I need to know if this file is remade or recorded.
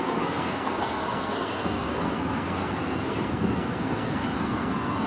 remade